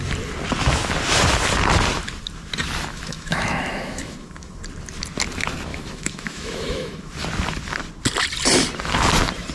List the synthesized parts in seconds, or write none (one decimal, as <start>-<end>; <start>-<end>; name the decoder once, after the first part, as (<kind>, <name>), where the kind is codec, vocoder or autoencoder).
2.9-4.6 (autoencoder, DAC-VAE); 5.7-7.1